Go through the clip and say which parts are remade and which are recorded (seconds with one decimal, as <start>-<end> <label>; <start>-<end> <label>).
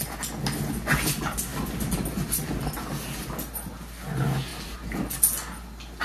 0.0-6.0 recorded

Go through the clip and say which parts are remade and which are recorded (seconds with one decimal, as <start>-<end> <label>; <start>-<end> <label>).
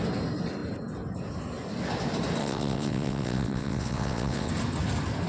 0.0-2.4 recorded; 2.4-4.5 remade; 4.5-5.3 recorded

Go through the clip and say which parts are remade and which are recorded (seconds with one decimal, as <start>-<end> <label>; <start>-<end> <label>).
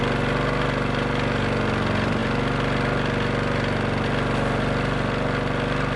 0.0-6.0 recorded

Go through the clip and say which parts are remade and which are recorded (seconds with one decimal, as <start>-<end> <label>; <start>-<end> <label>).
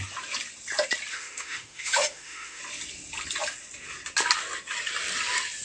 0.0-1.1 recorded; 1.1-2.6 remade; 2.6-5.6 recorded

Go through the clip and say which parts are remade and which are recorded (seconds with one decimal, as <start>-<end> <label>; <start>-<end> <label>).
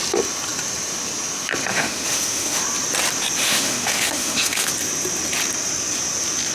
0.0-1.7 recorded; 1.7-2.6 remade; 2.6-3.4 recorded; 3.4-4.7 remade; 4.7-6.5 recorded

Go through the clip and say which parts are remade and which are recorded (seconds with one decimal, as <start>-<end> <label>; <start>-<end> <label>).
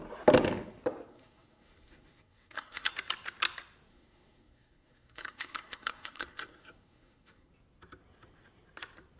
0.0-1.1 recorded; 1.1-2.9 remade; 2.9-3.9 recorded; 3.9-7.5 remade; 7.5-9.2 recorded